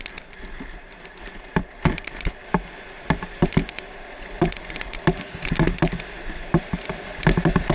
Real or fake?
real